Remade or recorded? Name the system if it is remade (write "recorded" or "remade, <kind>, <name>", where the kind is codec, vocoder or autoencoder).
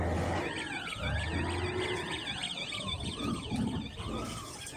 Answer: recorded